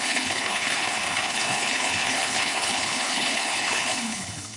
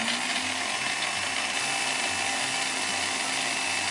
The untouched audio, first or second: second